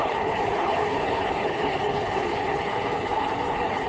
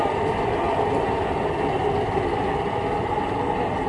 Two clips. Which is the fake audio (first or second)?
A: first